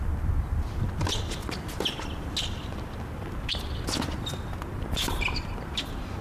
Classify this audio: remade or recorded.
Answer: recorded